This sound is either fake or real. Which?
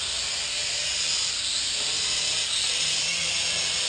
real